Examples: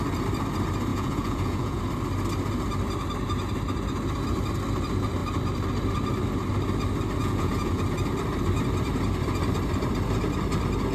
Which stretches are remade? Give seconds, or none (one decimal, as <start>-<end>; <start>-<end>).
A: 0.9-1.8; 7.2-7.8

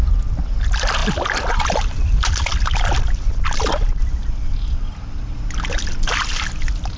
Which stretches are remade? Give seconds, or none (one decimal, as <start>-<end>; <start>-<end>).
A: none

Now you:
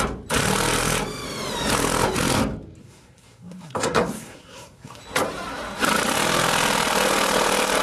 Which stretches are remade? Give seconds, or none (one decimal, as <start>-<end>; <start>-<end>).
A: 2.8-5.0

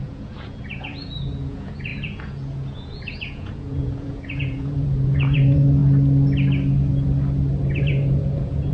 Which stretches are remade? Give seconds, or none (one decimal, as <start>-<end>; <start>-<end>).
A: 0.0-5.8; 7.8-8.7

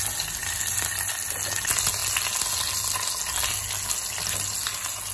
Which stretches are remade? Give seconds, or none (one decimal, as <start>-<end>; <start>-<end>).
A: 0.4-1.1

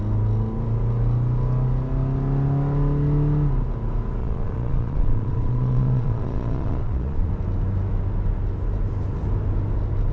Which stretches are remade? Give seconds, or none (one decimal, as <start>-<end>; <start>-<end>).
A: 4.2-7.3